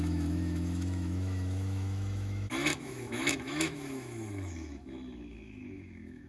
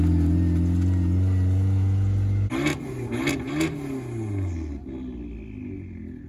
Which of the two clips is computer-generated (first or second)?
first